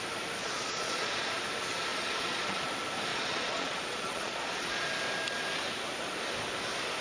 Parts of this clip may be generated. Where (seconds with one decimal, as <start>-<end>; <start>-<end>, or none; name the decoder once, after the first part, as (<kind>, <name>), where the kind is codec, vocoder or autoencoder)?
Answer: 0.4-1.3 (vocoder, Vocos); 1.9-2.6; 3.1-4.8